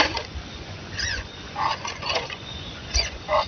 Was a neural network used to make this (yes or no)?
yes